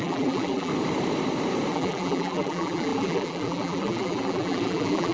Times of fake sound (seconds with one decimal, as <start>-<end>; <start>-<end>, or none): 0.0-0.7; 1.7-5.1